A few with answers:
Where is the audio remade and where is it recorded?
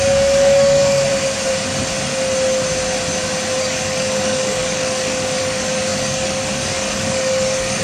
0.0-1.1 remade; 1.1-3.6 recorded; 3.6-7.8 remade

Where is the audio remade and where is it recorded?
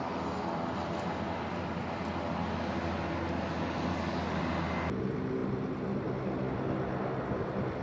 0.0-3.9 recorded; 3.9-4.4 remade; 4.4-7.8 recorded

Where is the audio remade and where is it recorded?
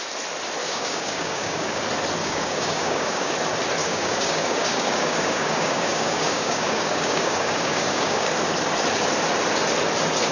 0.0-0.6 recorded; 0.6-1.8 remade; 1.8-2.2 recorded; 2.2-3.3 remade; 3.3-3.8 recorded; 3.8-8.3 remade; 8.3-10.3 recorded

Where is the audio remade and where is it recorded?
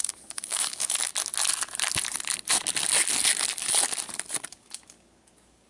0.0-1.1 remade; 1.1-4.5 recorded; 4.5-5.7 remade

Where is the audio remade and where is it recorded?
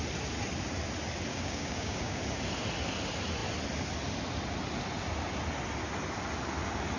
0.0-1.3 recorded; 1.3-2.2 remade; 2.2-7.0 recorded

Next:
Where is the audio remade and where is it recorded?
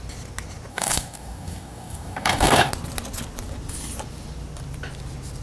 0.0-0.7 recorded; 0.7-2.7 remade; 2.7-5.4 recorded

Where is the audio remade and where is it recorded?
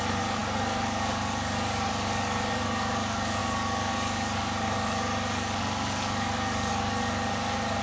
0.0-7.8 remade